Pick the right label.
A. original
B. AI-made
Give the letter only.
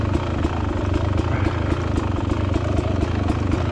A